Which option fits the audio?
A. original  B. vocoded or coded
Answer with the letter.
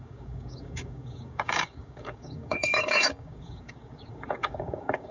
B